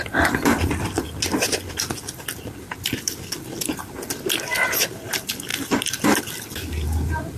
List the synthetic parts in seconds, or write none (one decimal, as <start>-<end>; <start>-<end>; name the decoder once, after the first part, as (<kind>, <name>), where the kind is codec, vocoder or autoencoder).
5.5-6.2 (vocoder, BigVGAN v2)